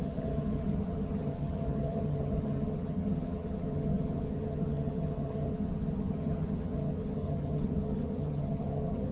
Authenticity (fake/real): fake